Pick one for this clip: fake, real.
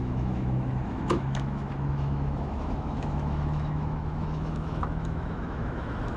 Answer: fake